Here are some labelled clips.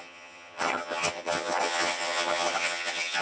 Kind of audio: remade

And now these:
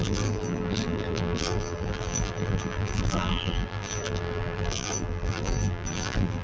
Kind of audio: remade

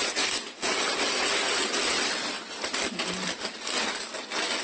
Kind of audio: recorded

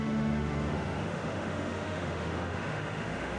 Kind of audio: remade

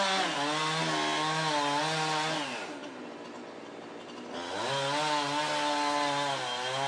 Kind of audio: recorded